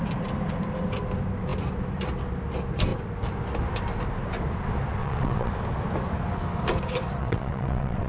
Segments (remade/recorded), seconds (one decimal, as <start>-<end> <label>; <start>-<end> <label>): 0.0-5.0 recorded; 5.0-5.5 remade; 5.5-7.2 recorded; 7.2-8.1 remade